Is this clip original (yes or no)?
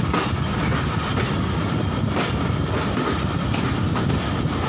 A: yes